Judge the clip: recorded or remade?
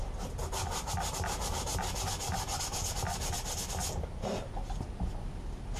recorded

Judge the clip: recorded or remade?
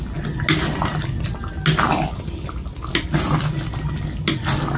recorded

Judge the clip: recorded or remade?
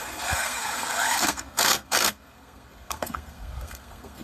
remade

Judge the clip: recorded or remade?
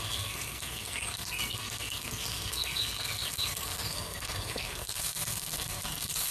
remade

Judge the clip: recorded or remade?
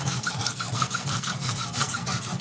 remade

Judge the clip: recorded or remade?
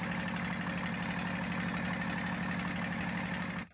recorded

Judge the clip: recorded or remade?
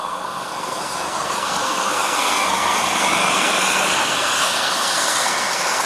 remade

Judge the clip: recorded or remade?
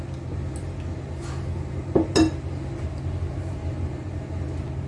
recorded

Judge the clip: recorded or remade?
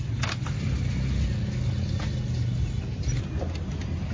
recorded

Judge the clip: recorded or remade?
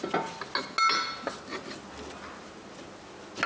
recorded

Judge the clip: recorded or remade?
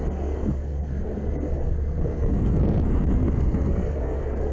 remade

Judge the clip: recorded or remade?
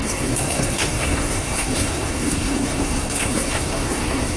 remade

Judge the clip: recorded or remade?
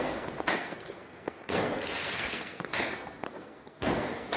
remade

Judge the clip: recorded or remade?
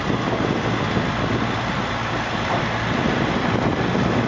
recorded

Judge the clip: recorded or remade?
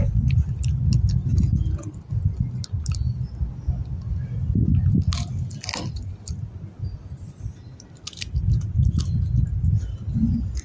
recorded